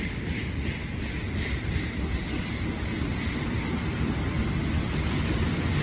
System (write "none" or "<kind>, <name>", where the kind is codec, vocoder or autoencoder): none